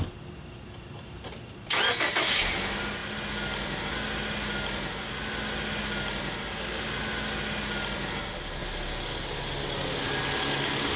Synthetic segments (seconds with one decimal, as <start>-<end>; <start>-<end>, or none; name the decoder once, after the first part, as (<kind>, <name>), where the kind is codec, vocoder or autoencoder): none